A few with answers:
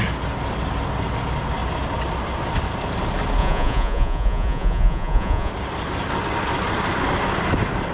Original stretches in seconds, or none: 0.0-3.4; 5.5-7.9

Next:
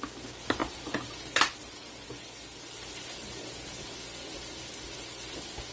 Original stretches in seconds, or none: 0.0-5.7